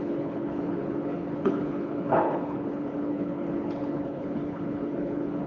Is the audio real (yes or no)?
no